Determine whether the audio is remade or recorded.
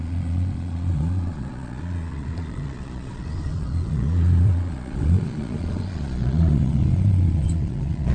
remade